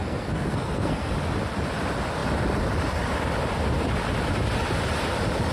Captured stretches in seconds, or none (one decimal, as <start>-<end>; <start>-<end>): 1.1-5.5